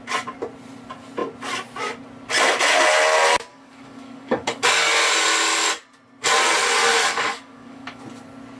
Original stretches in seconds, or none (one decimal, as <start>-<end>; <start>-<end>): 0.0-3.5; 4.9-7.0; 8.0-8.6